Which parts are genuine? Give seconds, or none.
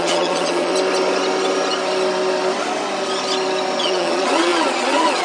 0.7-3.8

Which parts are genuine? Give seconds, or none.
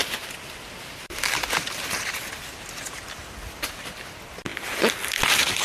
0.0-5.6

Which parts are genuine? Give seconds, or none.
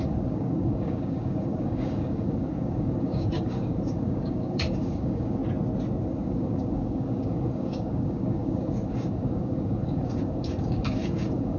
5.4-6.0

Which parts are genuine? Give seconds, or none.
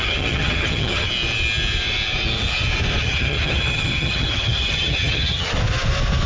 1.1-3.0; 5.5-6.3